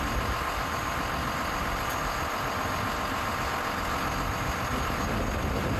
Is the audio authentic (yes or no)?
yes